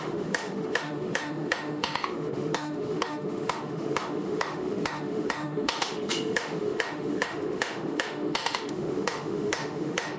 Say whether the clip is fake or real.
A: fake